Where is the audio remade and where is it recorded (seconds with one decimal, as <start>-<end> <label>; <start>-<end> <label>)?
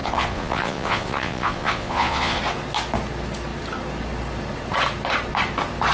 0.0-2.4 remade; 2.4-5.9 recorded